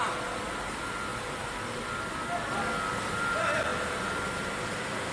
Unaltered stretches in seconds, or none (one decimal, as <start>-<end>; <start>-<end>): 0.0-5.1

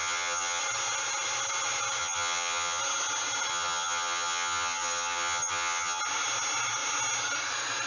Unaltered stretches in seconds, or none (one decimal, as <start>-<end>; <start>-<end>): 0.6-2.0; 2.8-3.5; 6.0-7.9

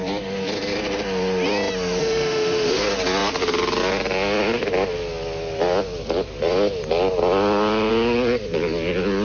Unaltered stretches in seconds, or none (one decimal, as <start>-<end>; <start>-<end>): 0.0-2.0; 2.8-9.2

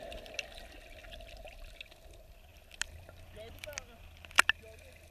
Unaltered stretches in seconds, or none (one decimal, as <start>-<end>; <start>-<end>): 0.0-5.1

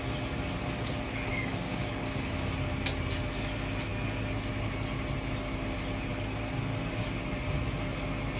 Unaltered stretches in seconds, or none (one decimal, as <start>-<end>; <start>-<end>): 0.0-1.3; 1.9-8.4

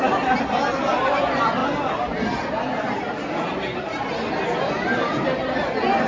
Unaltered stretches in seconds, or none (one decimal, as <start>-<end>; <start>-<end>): 0.0-6.1

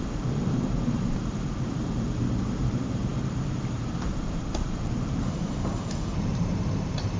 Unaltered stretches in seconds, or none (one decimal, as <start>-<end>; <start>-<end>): none

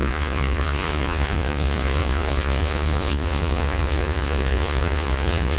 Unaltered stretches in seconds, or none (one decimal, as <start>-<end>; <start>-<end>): none